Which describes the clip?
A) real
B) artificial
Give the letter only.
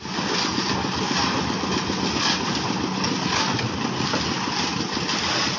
A